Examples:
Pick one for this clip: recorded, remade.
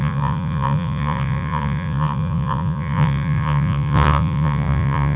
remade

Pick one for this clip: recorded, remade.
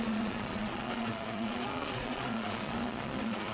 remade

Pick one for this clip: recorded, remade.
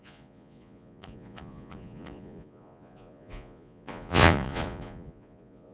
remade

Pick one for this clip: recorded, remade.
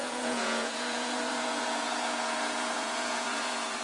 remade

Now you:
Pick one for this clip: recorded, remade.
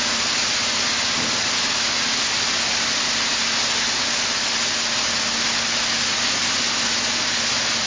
recorded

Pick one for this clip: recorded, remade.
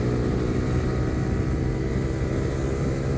recorded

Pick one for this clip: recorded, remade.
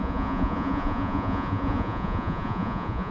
remade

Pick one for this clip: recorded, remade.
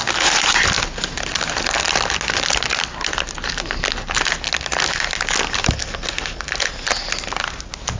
recorded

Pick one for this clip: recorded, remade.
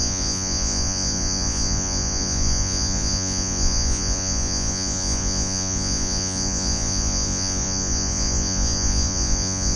remade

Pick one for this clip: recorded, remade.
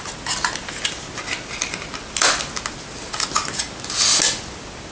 recorded